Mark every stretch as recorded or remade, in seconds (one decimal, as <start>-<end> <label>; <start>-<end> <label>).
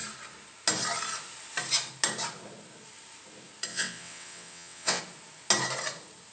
0.0-3.7 recorded; 3.7-5.0 remade; 5.0-6.3 recorded